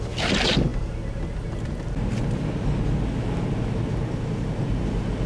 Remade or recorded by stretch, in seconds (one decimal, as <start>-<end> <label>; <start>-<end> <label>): 0.0-5.3 recorded